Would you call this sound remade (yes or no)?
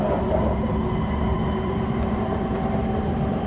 yes